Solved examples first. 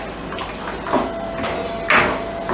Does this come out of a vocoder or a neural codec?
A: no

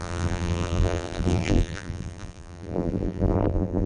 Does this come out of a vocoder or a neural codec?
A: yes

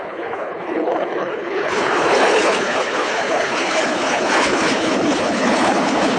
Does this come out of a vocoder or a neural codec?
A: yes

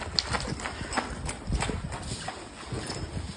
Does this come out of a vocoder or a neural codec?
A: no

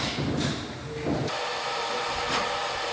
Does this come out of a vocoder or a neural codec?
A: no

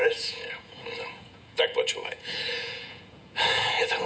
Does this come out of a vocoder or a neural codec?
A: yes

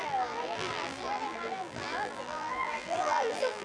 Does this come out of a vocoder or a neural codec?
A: yes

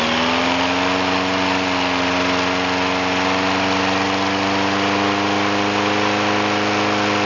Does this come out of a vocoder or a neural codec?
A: no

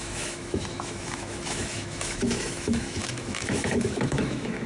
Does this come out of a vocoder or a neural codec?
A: yes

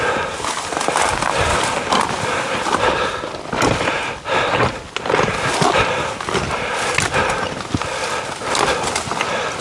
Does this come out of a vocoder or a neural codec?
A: no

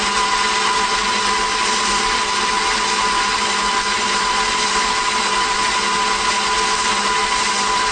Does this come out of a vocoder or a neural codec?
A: no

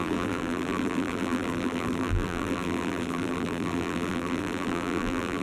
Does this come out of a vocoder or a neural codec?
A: yes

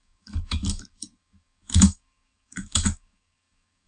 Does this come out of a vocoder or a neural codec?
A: yes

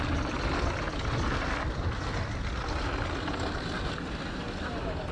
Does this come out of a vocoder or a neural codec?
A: no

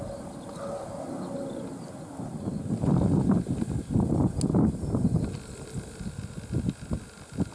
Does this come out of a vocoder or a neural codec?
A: no